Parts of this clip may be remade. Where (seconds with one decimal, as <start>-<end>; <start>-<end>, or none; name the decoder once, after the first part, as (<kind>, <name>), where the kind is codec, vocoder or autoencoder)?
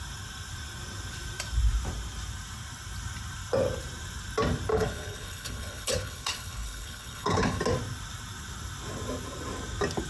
4.7-7.6 (codec, HILCodec)